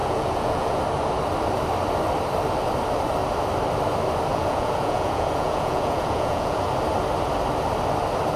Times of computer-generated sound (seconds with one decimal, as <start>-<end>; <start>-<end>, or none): 0.0-0.8; 4.3-6.7